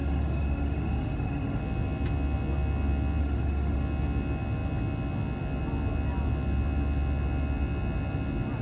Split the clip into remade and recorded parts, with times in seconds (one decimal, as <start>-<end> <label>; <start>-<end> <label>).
0.0-1.6 remade; 1.6-3.2 recorded; 3.2-3.8 remade; 3.8-8.6 recorded